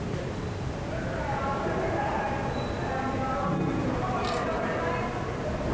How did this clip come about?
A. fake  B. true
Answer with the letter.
B